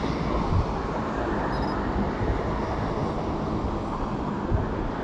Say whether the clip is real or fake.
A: real